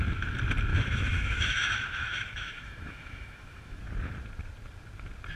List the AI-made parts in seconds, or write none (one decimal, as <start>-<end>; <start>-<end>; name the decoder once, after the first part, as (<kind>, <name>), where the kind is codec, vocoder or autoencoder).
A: 0.7-3.8 (autoencoder, DAC-VAE)